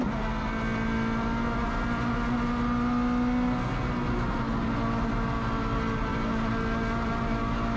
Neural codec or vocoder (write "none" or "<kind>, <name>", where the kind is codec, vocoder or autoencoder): none